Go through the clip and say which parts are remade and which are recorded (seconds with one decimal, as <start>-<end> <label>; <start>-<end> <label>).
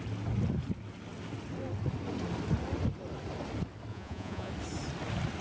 0.0-3.9 recorded; 3.9-4.5 remade; 4.5-5.4 recorded